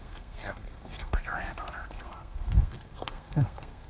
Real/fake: fake